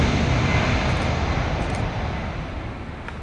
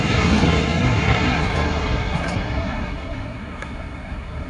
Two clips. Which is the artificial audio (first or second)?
second